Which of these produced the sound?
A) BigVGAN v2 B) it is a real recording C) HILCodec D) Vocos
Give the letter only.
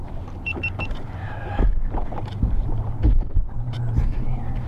A